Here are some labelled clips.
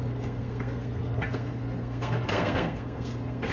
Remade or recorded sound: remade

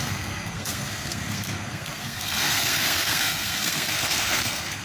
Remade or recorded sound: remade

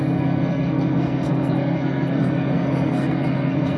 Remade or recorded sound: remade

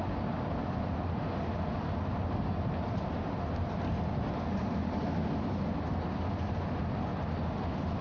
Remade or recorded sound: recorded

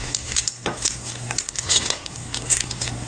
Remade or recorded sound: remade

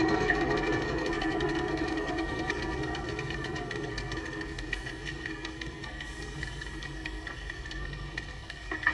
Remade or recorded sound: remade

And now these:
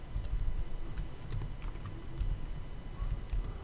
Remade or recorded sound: recorded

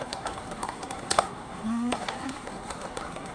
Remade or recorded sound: remade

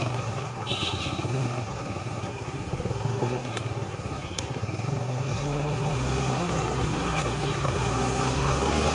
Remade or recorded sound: remade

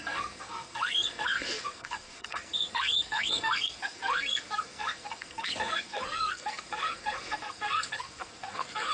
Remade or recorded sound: remade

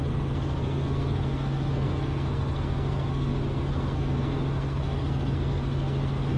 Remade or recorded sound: remade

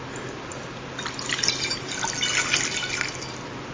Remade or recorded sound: recorded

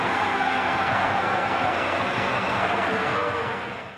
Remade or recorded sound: remade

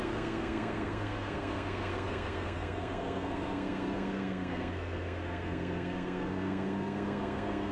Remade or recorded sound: remade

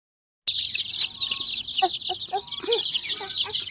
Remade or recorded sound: recorded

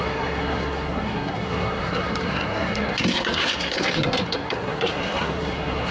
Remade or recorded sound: remade